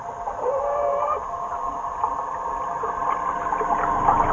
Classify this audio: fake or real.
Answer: real